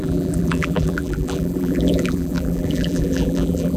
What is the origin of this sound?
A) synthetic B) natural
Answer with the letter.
A